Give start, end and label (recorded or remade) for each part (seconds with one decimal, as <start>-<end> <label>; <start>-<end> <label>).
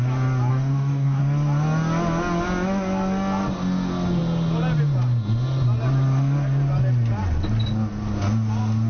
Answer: 0.0-0.5 recorded; 0.5-1.2 remade; 1.2-8.9 recorded